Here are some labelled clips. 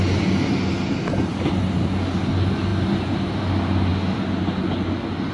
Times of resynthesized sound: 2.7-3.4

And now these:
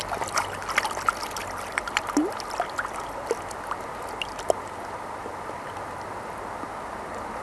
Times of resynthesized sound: none

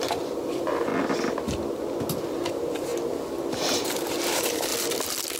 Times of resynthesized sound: 0.0-0.9; 2.5-2.9; 3.5-4.7

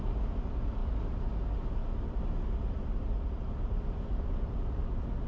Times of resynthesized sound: 0.8-1.3; 1.8-5.3

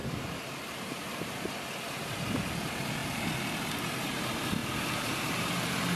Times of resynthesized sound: 0.0-2.1; 4.6-5.5

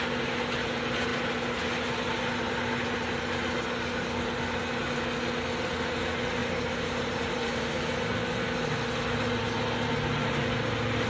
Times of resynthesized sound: 6.4-7.8